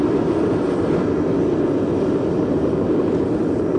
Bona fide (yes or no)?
yes